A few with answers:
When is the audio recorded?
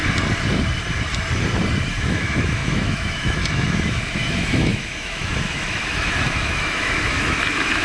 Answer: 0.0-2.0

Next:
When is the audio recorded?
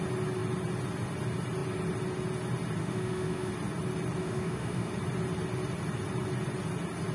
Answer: 0.0-2.8; 3.5-4.2; 4.9-7.1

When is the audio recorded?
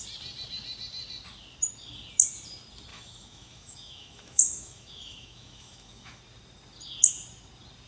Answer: 0.0-2.9; 6.2-7.9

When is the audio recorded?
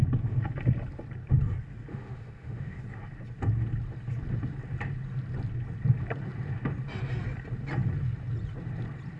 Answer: 0.0-1.9; 2.8-9.2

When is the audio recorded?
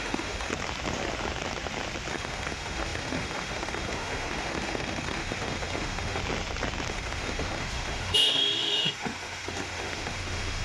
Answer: 0.5-2.1; 6.2-6.9